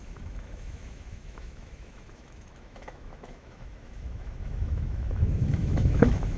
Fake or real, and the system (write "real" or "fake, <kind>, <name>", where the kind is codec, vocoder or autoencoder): fake, autoencoder, DAC-VAE